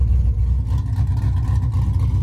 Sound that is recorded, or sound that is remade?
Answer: recorded